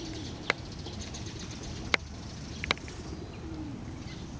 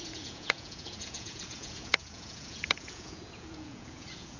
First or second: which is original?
first